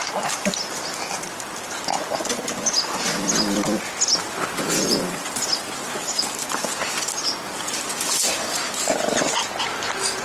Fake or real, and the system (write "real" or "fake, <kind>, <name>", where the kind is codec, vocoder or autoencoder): real